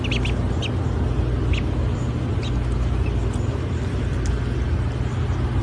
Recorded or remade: recorded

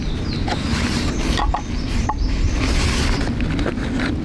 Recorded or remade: recorded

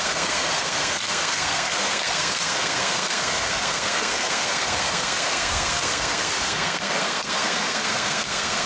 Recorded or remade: remade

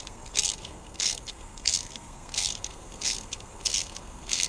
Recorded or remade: remade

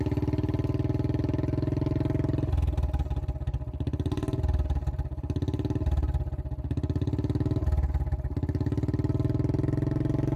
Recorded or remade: recorded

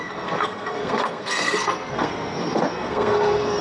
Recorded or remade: remade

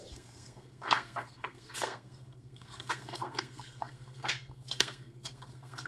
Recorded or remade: remade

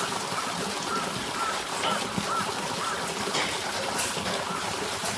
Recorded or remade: recorded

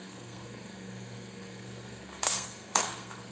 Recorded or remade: remade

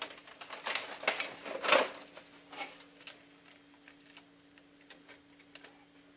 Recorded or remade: recorded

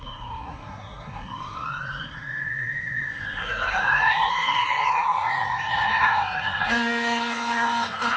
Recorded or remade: remade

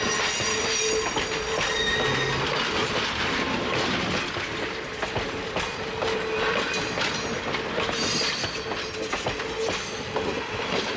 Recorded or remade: recorded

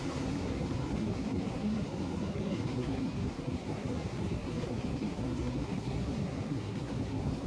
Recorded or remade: remade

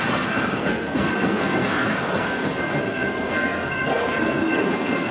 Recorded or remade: remade